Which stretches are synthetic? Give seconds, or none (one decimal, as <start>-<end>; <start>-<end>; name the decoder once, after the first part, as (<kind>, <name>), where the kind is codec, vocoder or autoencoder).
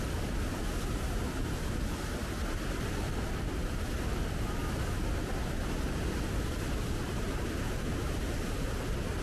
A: none